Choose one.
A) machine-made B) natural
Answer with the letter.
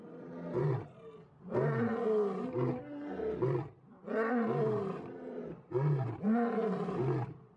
B